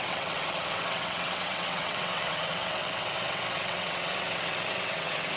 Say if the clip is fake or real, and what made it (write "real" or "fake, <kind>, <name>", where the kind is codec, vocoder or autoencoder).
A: fake, vocoder, WaveNeXt